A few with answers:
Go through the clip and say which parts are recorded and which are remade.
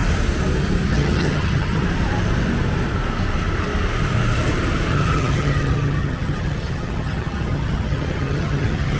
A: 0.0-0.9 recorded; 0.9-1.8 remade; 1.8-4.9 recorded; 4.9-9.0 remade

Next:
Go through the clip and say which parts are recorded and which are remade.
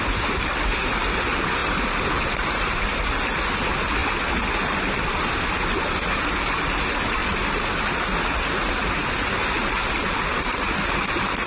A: 0.0-11.5 recorded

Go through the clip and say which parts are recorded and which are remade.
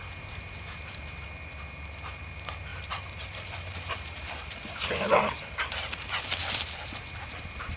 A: 0.0-2.7 recorded; 2.7-6.0 remade; 6.0-6.4 recorded; 6.4-7.8 remade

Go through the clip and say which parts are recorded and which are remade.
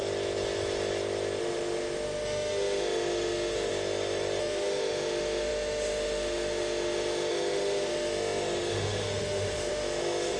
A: 0.0-1.4 recorded; 1.4-3.7 remade; 3.7-4.4 recorded; 4.4-10.4 remade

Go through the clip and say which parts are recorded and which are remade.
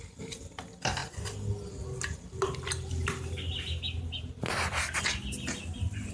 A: 0.0-6.1 recorded